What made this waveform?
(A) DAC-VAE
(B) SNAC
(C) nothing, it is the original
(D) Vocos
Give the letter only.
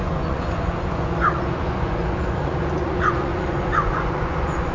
D